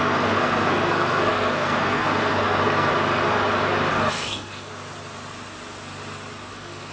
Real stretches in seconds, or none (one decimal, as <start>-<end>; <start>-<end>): 2.9-3.9; 4.7-6.5